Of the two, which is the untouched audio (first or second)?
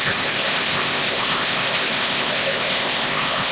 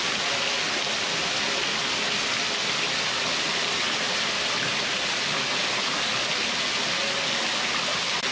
second